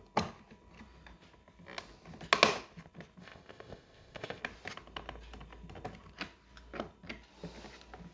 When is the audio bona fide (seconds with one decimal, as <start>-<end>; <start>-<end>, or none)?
0.0-3.2; 4.4-8.1